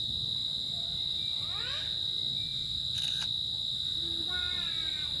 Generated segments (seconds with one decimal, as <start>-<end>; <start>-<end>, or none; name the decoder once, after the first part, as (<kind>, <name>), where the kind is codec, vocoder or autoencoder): none